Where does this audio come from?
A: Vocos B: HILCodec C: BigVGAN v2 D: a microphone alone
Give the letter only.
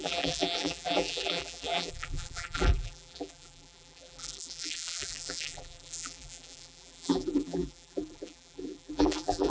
C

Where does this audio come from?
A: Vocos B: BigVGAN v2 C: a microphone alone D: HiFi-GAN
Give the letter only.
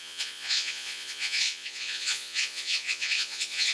A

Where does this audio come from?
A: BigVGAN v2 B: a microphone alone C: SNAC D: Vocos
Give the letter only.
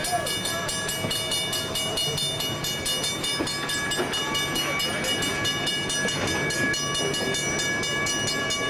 B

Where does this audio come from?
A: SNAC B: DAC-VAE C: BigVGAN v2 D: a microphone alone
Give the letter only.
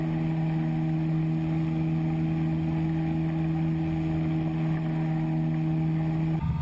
D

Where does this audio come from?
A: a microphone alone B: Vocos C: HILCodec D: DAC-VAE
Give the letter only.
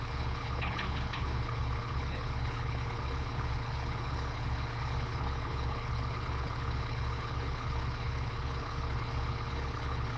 C